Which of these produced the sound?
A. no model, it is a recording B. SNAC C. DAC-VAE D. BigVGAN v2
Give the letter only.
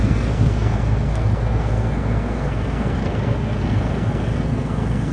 B